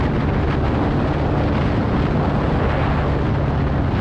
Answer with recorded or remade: recorded